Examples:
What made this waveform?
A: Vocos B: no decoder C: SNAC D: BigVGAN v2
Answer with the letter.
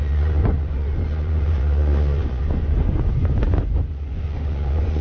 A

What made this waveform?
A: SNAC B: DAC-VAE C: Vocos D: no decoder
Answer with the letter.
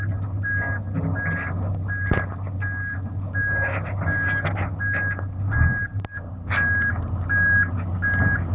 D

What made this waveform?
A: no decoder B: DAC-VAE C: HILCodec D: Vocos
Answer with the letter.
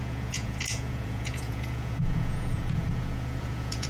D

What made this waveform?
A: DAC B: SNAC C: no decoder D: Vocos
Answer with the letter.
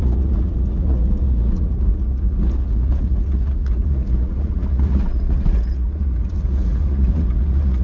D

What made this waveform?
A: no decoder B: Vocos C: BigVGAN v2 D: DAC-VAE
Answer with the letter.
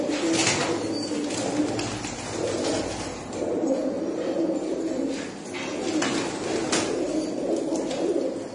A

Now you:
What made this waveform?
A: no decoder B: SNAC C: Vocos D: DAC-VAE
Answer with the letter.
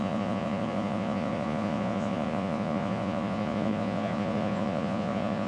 C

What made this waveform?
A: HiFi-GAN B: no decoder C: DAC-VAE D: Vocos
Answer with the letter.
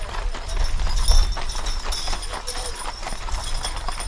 B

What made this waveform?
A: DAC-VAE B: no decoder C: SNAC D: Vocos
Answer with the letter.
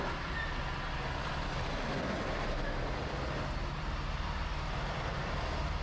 B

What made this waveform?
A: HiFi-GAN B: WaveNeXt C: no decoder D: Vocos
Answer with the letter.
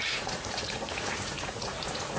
D